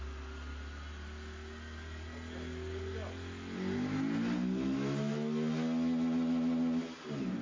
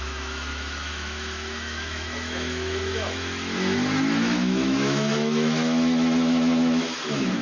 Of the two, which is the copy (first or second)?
second